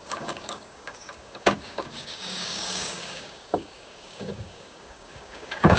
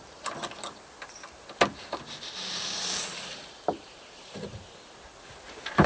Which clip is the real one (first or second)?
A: second